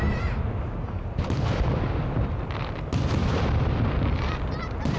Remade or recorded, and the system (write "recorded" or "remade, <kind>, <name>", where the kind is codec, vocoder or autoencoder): recorded